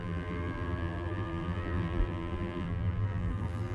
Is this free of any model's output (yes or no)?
no